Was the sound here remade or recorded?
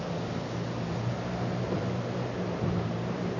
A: recorded